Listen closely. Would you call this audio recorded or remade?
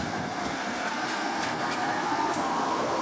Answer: remade